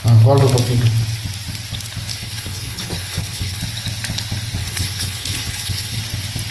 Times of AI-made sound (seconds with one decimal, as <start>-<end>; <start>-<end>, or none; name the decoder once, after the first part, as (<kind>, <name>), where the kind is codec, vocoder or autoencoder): 2.1-3.6 (codec, HILCodec); 4.6-6.0